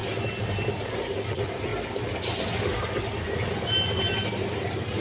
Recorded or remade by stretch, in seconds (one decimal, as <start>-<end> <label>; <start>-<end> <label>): 0.0-0.7 recorded; 0.7-1.7 remade; 1.7-5.0 recorded